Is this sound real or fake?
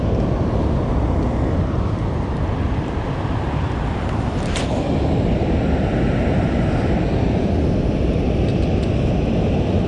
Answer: real